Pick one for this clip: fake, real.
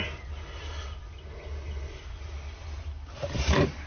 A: real